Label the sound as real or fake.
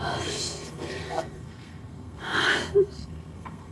fake